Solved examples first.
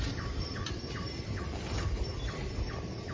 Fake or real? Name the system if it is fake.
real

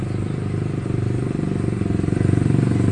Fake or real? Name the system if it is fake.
real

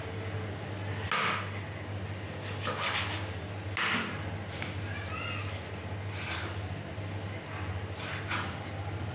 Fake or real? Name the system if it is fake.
real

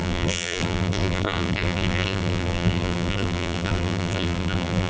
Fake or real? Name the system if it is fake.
fake, vocoder, BigVGAN v2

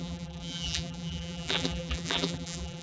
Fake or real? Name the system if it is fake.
fake, vocoder, BigVGAN v2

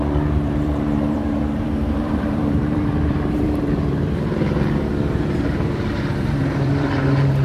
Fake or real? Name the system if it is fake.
fake, vocoder, BigVGAN v2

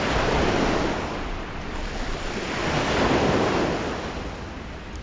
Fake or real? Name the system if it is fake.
real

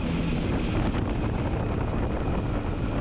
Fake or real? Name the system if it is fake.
real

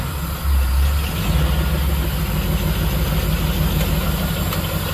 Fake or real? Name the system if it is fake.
real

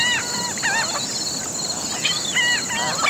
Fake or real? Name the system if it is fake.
real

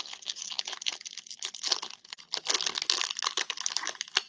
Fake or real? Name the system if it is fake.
real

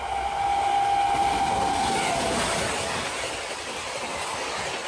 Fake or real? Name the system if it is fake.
real